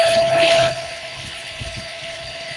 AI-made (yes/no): yes